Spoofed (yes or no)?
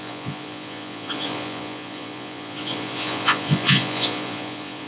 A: yes